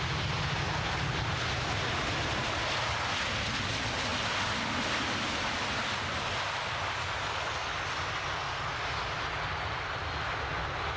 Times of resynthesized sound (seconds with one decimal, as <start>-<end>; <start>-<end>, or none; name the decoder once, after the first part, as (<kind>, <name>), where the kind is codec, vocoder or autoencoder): none